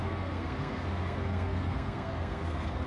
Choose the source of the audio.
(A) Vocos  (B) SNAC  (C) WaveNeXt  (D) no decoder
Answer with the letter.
B